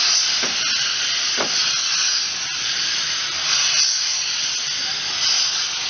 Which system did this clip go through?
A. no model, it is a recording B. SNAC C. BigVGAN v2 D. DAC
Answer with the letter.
A